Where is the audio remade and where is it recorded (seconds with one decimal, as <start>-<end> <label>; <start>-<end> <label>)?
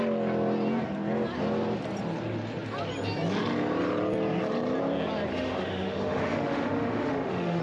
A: 0.0-5.3 recorded; 5.3-7.6 remade